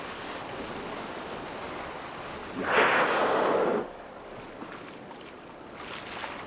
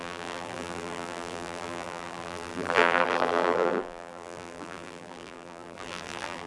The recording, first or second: first